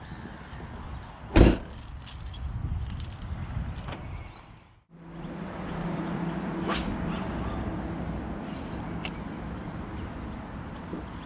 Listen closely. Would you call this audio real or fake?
real